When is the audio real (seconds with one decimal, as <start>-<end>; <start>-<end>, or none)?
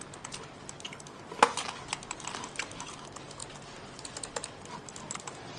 0.0-5.6